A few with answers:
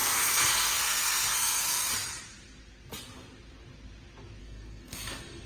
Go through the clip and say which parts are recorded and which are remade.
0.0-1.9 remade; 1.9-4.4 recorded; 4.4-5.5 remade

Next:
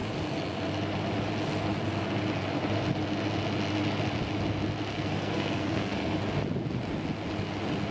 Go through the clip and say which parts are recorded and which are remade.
0.0-4.9 recorded; 4.9-6.2 remade; 6.2-7.9 recorded

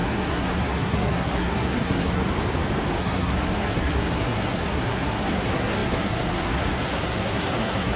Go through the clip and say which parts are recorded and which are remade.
0.0-2.2 remade; 2.2-3.0 recorded; 3.0-8.0 remade

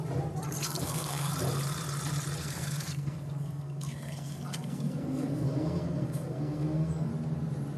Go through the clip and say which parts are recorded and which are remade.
0.0-0.6 recorded; 0.6-1.3 remade; 1.3-2.4 recorded; 2.4-7.1 remade; 7.1-7.8 recorded

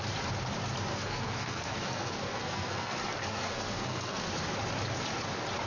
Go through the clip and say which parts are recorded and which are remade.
0.0-0.9 recorded; 0.9-4.3 remade; 4.3-5.7 recorded

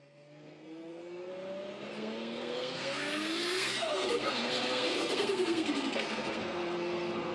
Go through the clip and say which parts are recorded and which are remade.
0.0-1.3 remade; 1.3-1.9 recorded; 1.9-7.3 remade

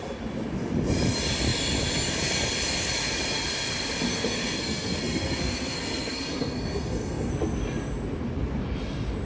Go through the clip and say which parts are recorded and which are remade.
0.0-4.1 recorded; 4.1-7.3 remade; 7.3-9.3 recorded